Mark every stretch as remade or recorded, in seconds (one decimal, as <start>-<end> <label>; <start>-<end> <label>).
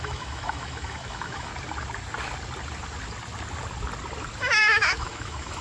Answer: 0.0-1.5 remade; 1.5-4.4 recorded; 4.4-5.6 remade